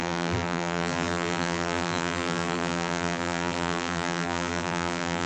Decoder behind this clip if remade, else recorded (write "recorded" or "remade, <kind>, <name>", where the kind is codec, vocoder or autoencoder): remade, vocoder, BigVGAN v2